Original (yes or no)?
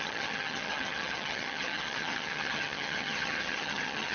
no